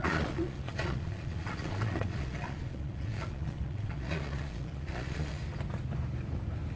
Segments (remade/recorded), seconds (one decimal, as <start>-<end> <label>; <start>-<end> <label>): 0.0-5.4 remade; 5.4-6.8 recorded